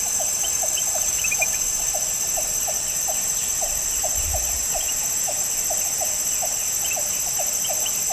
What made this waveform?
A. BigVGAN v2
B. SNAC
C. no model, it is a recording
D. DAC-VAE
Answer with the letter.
C